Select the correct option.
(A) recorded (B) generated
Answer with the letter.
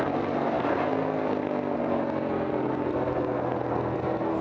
B